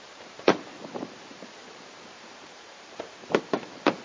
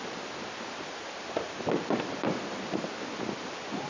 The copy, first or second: first